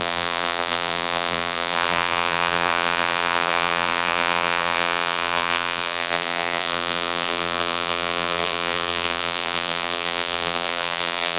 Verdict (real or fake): fake